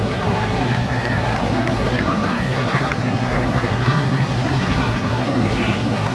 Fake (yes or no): yes